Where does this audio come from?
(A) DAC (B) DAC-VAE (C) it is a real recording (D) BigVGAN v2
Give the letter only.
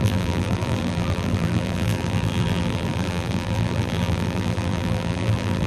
D